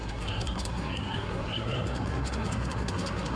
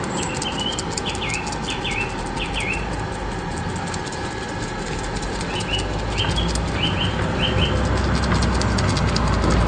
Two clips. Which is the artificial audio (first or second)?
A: first